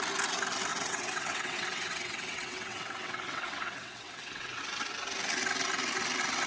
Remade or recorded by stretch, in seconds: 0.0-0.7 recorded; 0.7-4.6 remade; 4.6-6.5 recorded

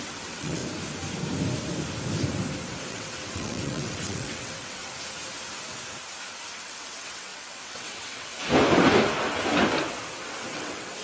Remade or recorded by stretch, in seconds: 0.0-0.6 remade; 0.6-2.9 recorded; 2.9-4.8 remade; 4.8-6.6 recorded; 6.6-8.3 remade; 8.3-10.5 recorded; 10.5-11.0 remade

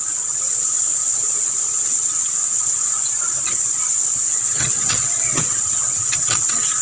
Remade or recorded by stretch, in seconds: 0.0-6.8 remade

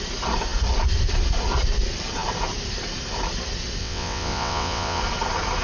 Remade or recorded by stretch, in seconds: 0.0-3.8 recorded; 3.8-5.0 remade; 5.0-5.6 recorded